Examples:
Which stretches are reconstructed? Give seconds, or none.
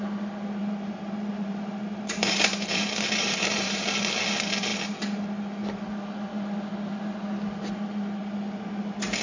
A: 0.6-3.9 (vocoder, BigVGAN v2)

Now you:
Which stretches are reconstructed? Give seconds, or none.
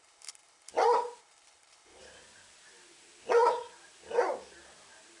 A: 0.0-0.7 (codec, HILCodec); 1.2-2.0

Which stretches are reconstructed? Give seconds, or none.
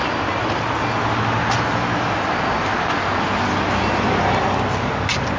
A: none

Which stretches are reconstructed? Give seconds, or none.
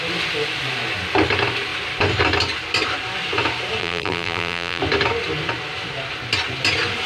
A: 3.8-4.8 (vocoder, BigVGAN v2)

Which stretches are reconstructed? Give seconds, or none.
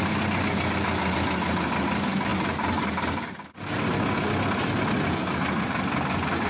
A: none